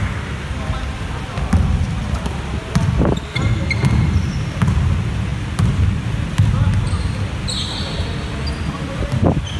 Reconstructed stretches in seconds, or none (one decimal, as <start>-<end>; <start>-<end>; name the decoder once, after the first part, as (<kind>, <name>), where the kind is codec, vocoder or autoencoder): none